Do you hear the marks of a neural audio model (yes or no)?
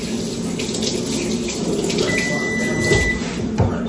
no